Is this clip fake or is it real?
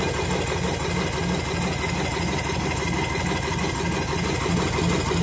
real